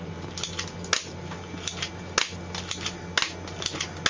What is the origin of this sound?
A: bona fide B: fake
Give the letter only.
A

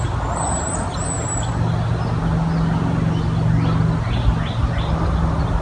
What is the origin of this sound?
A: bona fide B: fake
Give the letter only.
A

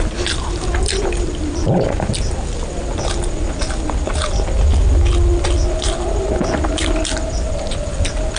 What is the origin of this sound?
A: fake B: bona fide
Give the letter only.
B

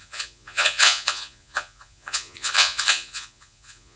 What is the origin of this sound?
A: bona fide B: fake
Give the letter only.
B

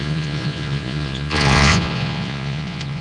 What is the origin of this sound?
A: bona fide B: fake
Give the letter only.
B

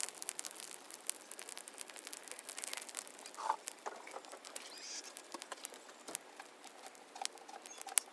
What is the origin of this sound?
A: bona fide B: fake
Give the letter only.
A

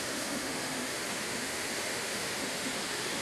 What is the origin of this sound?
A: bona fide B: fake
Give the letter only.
B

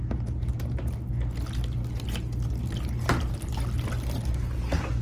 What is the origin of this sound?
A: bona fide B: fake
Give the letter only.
A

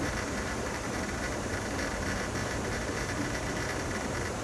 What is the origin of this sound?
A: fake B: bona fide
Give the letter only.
A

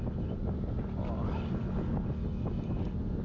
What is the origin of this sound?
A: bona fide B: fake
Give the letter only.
A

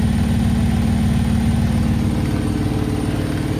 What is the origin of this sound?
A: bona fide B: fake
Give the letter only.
A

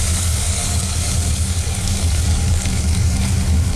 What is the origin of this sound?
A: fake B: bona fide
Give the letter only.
A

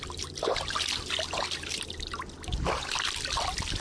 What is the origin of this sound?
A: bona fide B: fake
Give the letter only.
A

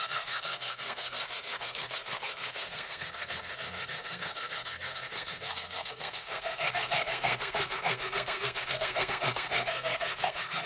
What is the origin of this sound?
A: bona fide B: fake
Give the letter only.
B